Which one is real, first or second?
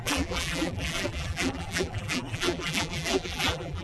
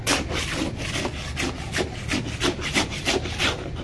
second